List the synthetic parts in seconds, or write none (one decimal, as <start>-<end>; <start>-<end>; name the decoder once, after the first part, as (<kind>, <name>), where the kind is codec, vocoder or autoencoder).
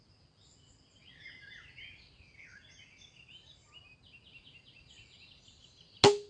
none